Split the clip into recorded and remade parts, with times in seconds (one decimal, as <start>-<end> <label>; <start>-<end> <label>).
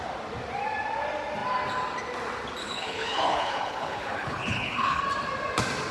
0.0-2.6 recorded; 2.6-5.0 remade; 5.0-5.9 recorded